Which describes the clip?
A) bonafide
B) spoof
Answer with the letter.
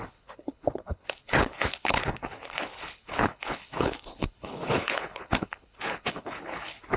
B